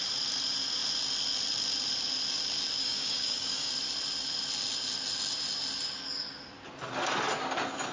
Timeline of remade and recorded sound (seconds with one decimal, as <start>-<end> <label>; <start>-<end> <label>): 0.0-2.8 recorded; 2.8-3.7 remade; 3.7-7.9 recorded

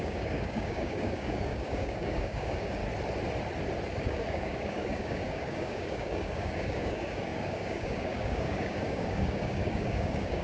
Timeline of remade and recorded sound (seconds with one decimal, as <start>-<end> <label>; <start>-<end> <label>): 0.0-2.8 remade; 2.8-4.0 recorded; 4.0-10.4 remade

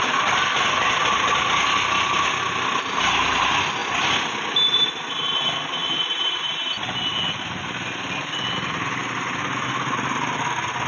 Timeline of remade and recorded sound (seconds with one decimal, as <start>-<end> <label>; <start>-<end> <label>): 0.0-10.9 recorded

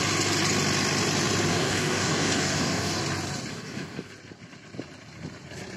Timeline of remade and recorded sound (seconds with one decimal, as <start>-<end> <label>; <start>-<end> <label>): 0.0-1.5 recorded; 1.5-3.0 remade; 3.0-3.5 recorded; 3.5-4.1 remade; 4.1-5.8 recorded